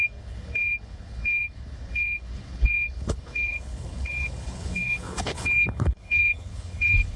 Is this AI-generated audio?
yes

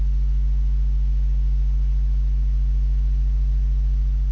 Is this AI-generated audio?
no